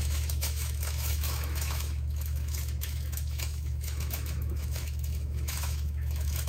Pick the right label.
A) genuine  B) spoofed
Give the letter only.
B